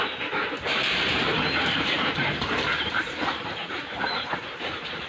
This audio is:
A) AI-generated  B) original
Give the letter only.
A